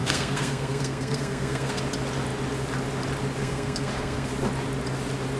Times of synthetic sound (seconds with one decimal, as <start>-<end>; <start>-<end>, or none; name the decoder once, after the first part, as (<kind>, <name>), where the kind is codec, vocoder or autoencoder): 0.0-1.8 (codec, SNAC); 3.4-4.3